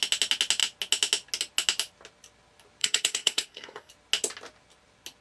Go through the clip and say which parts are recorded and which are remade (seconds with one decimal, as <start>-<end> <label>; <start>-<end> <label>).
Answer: 0.0-2.8 recorded; 2.8-3.9 remade; 3.9-5.2 recorded